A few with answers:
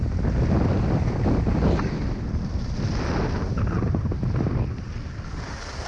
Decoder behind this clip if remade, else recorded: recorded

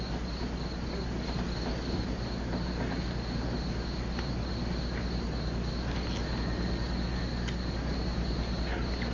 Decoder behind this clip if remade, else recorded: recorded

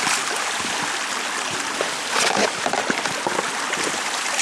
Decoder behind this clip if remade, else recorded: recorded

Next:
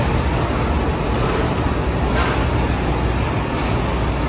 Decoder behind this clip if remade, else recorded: recorded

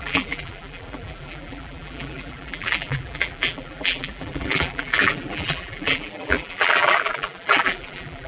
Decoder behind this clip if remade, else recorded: remade, vocoder, BigVGAN v2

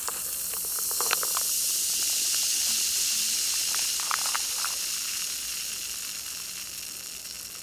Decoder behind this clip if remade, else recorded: recorded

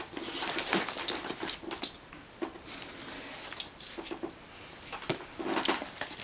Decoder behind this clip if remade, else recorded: recorded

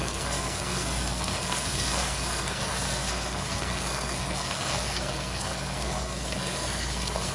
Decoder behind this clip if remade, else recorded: remade, codec, SNAC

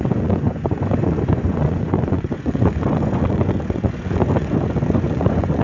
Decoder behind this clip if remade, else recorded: remade, vocoder, Vocos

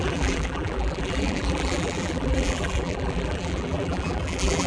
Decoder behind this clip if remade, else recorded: remade, vocoder, BigVGAN v2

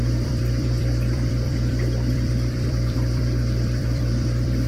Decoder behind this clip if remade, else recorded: remade, vocoder, BigVGAN v2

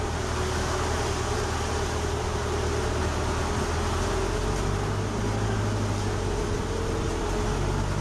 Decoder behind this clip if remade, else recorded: recorded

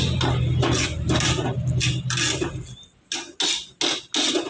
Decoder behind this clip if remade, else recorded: recorded